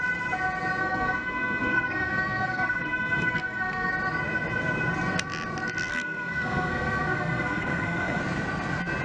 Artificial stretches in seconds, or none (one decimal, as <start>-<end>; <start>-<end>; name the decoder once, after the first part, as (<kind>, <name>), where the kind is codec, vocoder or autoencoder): 0.8-3.9 (codec, SNAC); 5.9-8.2

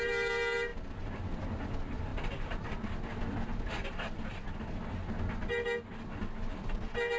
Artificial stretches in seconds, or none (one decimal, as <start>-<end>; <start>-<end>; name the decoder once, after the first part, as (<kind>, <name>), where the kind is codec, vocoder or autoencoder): none

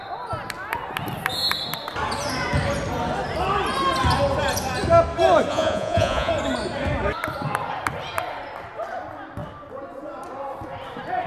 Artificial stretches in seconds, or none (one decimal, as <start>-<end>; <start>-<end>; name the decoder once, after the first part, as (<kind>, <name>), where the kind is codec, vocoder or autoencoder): 5.5-6.3 (vocoder, Vocos)

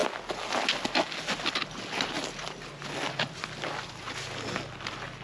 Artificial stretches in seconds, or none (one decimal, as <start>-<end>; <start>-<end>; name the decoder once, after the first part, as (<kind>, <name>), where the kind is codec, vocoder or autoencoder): none

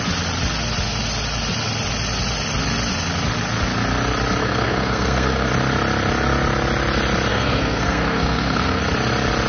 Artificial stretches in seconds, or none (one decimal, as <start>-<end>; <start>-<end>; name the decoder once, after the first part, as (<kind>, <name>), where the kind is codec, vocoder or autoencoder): 4.4-5.5 (codec, SNAC); 7.3-8.8

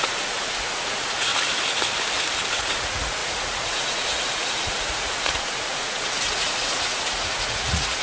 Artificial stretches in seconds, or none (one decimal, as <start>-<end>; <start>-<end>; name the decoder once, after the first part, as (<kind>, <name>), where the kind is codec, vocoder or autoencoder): 0.0-1.3 (vocoder, Vocos); 2.5-8.0

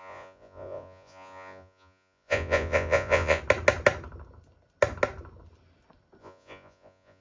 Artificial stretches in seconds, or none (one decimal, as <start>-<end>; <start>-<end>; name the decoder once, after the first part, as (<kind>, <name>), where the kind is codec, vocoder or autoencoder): 0.0-3.4 (vocoder, Vocos); 6.2-7.2

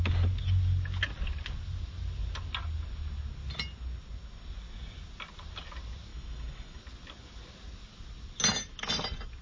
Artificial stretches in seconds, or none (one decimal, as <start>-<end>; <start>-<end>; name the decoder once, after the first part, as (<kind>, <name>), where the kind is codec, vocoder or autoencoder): 6.1-6.8 (autoencoder, DAC-VAE)